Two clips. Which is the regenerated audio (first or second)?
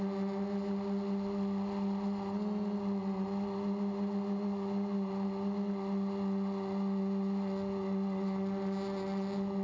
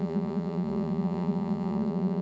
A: second